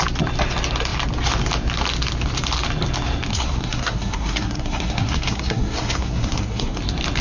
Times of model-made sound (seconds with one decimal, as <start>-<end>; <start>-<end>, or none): 3.3-6.8